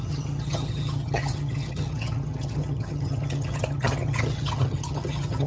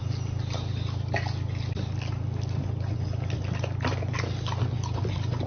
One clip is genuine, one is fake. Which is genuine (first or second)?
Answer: second